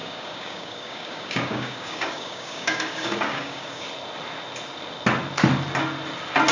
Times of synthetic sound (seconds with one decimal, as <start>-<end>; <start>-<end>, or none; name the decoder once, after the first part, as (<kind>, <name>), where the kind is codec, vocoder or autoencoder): 0.0-3.9 (codec, DAC)